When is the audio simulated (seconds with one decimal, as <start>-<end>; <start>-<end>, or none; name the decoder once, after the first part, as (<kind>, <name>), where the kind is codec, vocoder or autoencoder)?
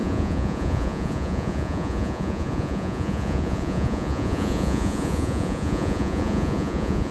0.0-7.1 (vocoder, Vocos)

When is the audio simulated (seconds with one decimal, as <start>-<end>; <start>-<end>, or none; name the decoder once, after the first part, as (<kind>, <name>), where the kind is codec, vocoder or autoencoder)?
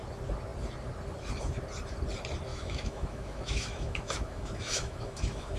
2.5-5.6 (autoencoder, DAC-VAE)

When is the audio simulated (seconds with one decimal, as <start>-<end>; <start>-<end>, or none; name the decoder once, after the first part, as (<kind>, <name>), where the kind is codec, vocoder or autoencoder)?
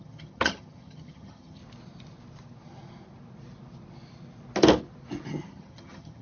0.0-1.6 (vocoder, HiFi-GAN); 5.3-6.2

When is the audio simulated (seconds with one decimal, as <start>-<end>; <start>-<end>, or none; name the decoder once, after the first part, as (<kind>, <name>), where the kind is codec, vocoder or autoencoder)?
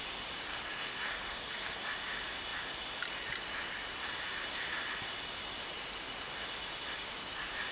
0.5-1.8 (codec, SNAC)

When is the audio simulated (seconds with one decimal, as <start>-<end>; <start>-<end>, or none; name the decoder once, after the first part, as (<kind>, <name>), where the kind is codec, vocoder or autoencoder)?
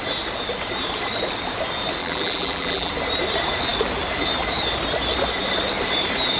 2.0-2.9 (vocoder, BigVGAN v2)